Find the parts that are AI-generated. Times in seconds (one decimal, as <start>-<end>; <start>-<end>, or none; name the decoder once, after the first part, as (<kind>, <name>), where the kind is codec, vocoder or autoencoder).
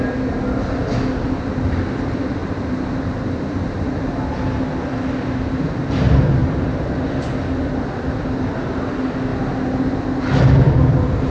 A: 2.4-3.4 (vocoder, BigVGAN v2); 6.4-6.9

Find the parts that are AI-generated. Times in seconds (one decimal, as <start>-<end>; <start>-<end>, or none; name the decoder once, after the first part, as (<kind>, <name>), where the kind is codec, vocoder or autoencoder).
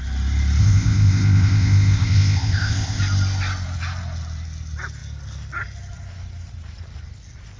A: 0.6-3.0 (codec, ZipCodec)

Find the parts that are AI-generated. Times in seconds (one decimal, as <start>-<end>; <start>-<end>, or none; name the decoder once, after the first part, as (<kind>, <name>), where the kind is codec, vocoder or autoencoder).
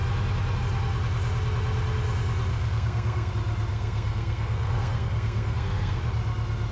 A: 2.5-3.3 (codec, SNAC); 3.7-6.0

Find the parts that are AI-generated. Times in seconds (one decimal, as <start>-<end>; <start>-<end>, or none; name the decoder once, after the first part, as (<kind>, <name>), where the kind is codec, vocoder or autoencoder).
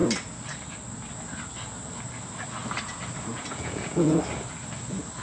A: 3.3-4.2 (vocoder, Vocos)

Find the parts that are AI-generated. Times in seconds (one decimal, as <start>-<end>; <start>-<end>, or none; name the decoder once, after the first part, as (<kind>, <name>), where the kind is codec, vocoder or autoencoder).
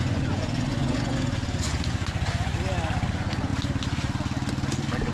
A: 0.0-2.5 (vocoder, Vocos); 3.1-3.5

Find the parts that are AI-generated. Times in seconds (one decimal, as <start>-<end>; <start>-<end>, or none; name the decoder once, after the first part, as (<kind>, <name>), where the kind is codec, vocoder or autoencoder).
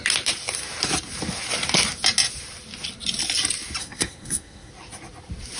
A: 3.8-4.7 (codec, SNAC)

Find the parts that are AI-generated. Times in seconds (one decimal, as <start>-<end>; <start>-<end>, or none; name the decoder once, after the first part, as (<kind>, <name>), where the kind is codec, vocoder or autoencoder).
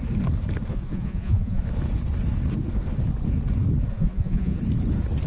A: 0.7-1.6 (vocoder, Vocos); 3.9-4.6